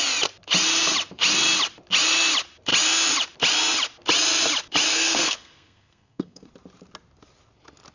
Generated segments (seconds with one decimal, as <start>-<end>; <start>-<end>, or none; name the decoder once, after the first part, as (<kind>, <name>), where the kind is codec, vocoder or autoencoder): 4.9-6.5 (codec, SNAC)